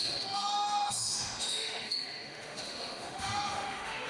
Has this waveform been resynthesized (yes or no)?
yes